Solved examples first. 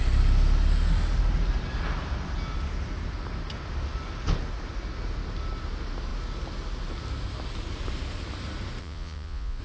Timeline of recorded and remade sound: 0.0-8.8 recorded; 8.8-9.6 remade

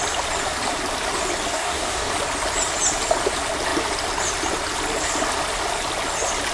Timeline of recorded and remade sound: 0.0-1.5 recorded; 1.5-2.1 remade; 2.1-6.5 recorded

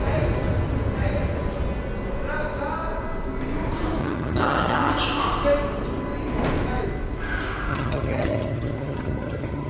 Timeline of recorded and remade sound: 0.0-4.0 recorded; 4.0-4.9 remade; 4.9-7.7 recorded; 7.7-9.7 remade